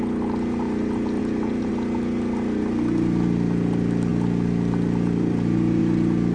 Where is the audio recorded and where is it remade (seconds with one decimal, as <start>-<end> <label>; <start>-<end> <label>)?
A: 0.0-1.2 recorded; 1.2-1.7 remade; 1.7-6.3 recorded